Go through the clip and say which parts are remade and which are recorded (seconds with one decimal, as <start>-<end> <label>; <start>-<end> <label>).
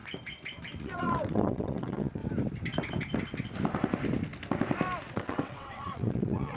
0.0-0.8 recorded; 0.8-2.2 remade; 2.2-5.1 recorded; 5.1-6.6 remade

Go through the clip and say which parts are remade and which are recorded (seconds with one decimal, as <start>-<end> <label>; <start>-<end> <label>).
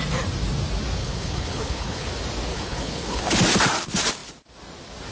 0.0-1.0 recorded; 1.0-2.1 remade; 2.1-2.5 recorded; 2.5-3.2 remade; 3.2-5.1 recorded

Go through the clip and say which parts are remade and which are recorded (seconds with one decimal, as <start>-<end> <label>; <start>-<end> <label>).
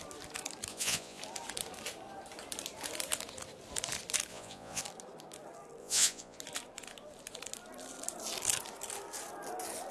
0.0-0.7 recorded; 0.7-1.2 remade; 1.2-4.3 recorded; 4.3-4.8 remade; 4.8-5.8 recorded; 5.8-6.4 remade; 6.4-9.9 recorded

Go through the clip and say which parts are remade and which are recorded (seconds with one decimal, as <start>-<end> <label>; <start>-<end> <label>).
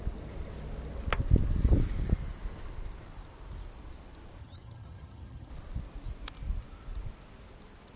0.0-4.4 recorded; 4.4-5.5 remade; 5.5-8.0 recorded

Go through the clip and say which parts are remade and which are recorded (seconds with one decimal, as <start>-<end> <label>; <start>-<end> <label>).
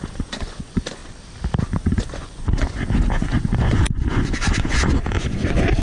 0.0-1.0 remade; 1.0-1.6 recorded; 1.6-5.8 remade